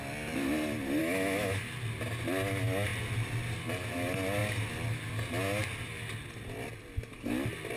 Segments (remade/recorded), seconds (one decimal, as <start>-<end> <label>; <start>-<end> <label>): 0.0-1.0 recorded; 1.0-1.6 remade; 1.6-7.8 recorded